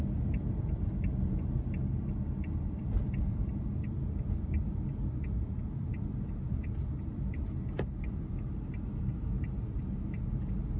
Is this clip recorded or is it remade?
recorded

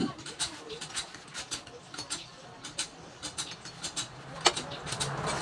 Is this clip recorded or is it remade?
recorded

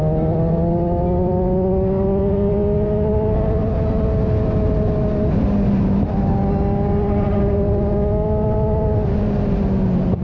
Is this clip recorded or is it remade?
recorded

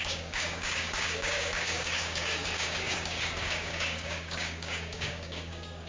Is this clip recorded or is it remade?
remade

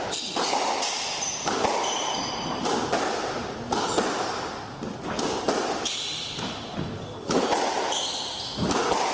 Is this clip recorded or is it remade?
recorded